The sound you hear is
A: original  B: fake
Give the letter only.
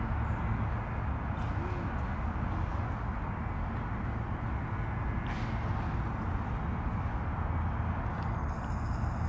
A